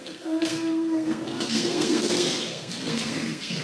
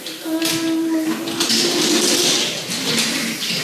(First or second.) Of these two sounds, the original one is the second